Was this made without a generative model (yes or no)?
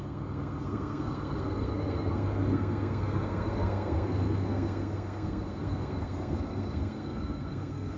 no